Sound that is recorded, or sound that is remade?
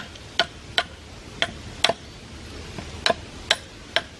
recorded